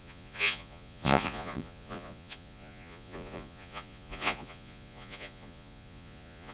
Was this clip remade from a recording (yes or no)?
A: yes